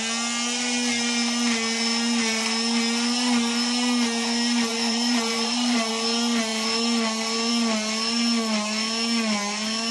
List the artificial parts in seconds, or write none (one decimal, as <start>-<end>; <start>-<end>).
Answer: 4.7-5.9